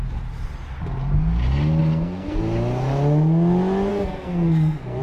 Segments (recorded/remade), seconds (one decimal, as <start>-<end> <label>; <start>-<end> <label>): 0.0-1.8 recorded; 1.8-2.4 remade; 2.4-3.9 recorded; 3.9-5.0 remade